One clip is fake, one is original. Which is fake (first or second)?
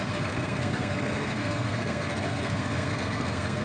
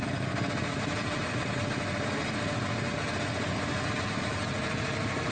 first